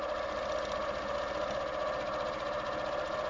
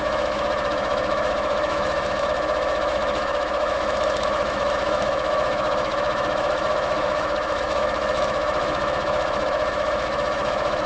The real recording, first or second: first